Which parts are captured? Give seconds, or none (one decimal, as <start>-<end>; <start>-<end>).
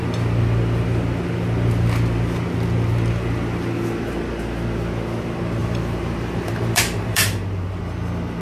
0.0-5.6; 7.8-8.4